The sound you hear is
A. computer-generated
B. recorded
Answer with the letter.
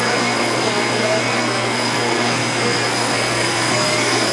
A